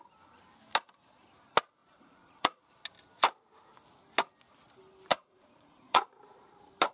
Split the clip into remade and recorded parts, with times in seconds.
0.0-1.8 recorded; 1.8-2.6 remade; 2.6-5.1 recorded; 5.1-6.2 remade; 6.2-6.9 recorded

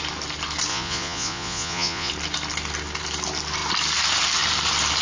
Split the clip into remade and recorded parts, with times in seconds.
0.0-0.7 recorded; 0.7-2.1 remade; 2.1-5.0 recorded

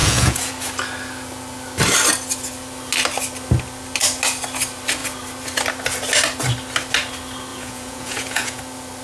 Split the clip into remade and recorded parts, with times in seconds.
0.0-0.5 remade; 0.5-7.5 recorded; 7.5-8.6 remade; 8.6-9.0 recorded

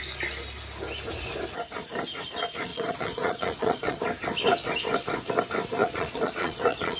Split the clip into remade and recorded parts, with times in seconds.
0.0-2.7 recorded; 2.7-4.0 remade; 4.0-5.8 recorded; 5.8-7.0 remade

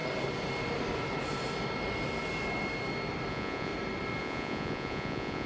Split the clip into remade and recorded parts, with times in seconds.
0.0-3.3 recorded; 3.3-3.7 remade; 3.7-4.2 recorded; 4.2-5.5 remade

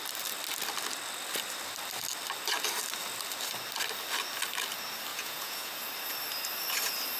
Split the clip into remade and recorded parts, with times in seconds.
0.0-5.1 recorded; 5.1-5.7 remade; 5.7-7.2 recorded

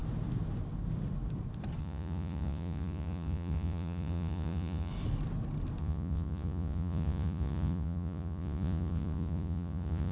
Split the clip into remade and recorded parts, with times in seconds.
0.0-1.8 recorded; 1.8-4.9 remade; 4.9-5.8 recorded; 5.8-10.1 remade

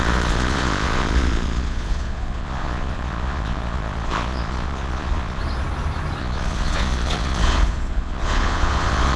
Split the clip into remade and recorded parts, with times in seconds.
0.0-5.4 remade; 5.4-6.2 recorded; 6.2-9.2 remade